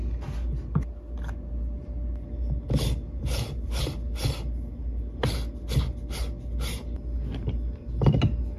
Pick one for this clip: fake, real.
real